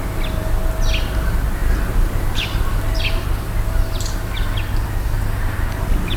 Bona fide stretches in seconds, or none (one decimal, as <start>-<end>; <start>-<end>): 0.0-1.6; 3.0-6.2